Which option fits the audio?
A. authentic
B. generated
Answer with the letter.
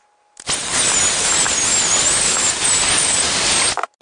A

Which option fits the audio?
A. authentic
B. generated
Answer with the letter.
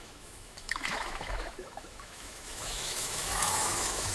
B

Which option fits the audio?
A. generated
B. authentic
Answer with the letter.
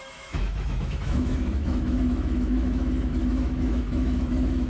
A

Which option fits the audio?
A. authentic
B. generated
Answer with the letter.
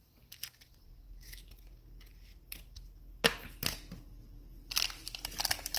A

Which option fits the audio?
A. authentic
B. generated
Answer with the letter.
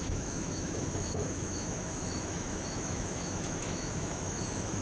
B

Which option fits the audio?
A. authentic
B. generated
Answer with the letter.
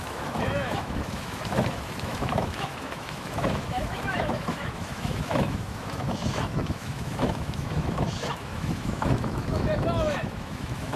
B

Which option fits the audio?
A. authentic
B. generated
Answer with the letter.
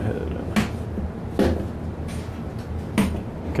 A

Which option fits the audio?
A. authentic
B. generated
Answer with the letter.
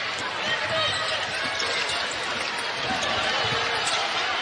A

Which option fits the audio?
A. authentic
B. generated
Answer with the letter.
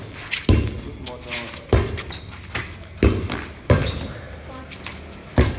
A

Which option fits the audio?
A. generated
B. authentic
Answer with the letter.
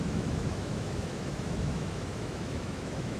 A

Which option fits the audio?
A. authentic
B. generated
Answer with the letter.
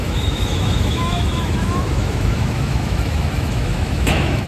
B